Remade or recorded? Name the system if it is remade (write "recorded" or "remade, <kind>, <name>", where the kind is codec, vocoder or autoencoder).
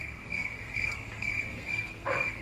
remade, codec, SNAC